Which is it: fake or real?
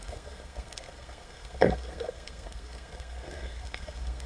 fake